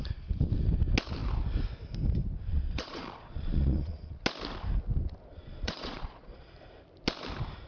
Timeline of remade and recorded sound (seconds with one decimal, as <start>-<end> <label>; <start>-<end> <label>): 0.0-2.5 recorded; 2.5-4.2 remade; 4.2-5.3 recorded; 5.3-6.5 remade; 6.5-7.7 recorded